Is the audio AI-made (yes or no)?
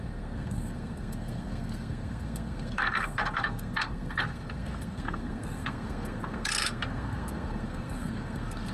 yes